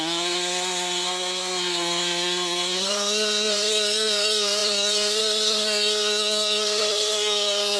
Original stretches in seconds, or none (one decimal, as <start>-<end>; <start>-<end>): none